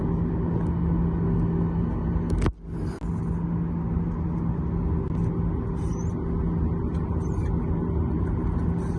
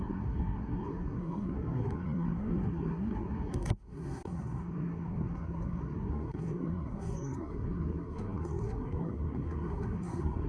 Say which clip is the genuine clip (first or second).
first